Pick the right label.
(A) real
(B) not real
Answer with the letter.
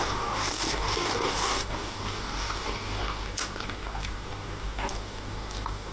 B